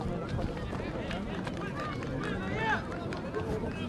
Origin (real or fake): real